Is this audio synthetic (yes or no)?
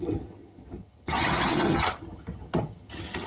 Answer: yes